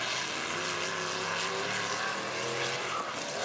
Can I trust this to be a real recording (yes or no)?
yes